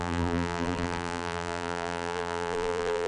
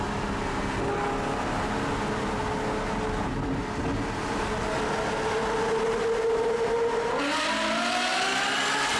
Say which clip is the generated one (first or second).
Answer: first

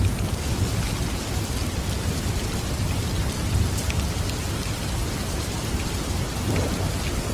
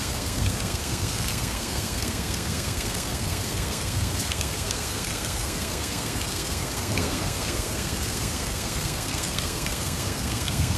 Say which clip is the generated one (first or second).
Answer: second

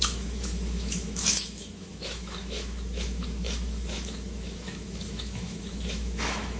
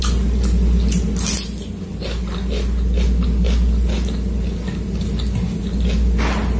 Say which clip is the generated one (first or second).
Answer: first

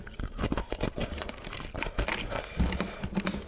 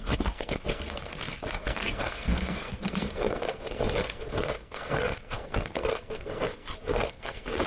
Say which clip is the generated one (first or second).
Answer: second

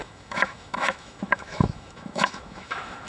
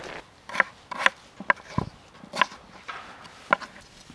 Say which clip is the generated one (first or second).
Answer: first